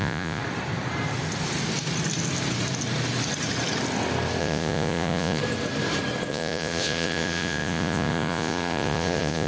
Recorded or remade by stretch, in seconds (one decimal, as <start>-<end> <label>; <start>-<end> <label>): 0.0-0.4 remade; 0.4-4.4 recorded; 4.4-5.4 remade; 5.4-6.3 recorded; 6.3-9.5 remade

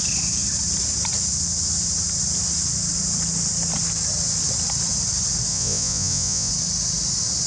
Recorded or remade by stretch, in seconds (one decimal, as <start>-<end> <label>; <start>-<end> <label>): 0.0-5.5 recorded; 5.5-6.5 remade; 6.5-7.5 recorded

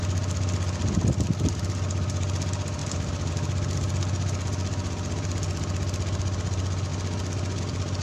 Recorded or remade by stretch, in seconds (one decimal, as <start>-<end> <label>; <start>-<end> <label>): 0.0-2.8 recorded; 2.8-3.3 remade; 3.3-8.0 recorded

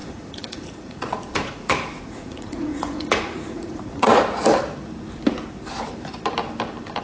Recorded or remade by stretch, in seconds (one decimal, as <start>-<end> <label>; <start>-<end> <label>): 0.0-4.2 remade; 4.2-7.0 recorded